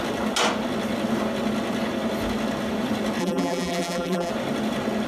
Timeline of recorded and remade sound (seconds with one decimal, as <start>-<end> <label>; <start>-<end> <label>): 0.0-3.2 recorded; 3.2-4.3 remade; 4.3-5.1 recorded